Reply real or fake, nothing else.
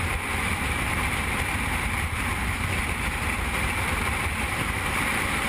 fake